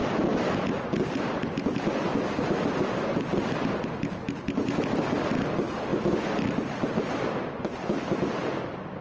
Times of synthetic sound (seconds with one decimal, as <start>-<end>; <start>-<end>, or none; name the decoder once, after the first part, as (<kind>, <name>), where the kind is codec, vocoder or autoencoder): none

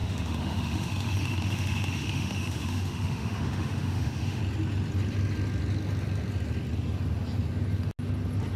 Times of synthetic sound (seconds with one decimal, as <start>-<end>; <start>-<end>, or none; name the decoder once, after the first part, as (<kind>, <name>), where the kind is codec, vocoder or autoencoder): 0.0-4.4 (autoencoder, DAC-VAE)